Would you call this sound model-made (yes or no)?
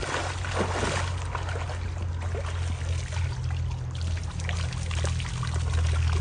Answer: no